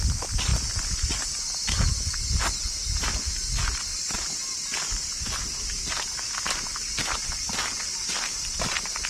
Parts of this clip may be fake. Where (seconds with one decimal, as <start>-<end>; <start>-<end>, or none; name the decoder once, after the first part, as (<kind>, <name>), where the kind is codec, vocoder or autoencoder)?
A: none